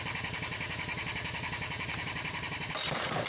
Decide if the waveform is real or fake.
fake